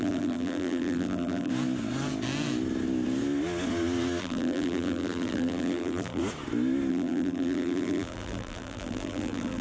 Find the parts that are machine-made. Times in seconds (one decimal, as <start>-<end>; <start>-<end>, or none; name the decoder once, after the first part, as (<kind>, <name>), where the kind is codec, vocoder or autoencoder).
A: 0.0-1.5 (vocoder, BigVGAN v2); 4.2-6.2; 6.9-9.6